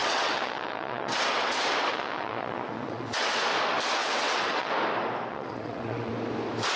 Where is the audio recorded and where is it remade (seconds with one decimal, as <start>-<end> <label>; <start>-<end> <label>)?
0.0-3.4 remade; 3.4-4.0 recorded; 4.0-4.7 remade; 4.7-5.3 recorded; 5.3-6.1 remade; 6.1-6.8 recorded